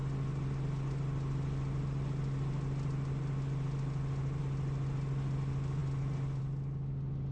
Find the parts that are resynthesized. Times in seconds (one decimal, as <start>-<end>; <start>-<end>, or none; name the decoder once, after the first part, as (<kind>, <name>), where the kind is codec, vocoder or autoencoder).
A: none